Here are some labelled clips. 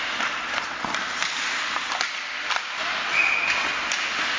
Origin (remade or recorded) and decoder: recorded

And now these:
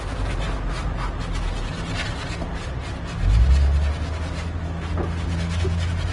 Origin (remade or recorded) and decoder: recorded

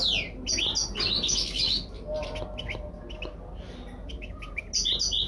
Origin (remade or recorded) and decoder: recorded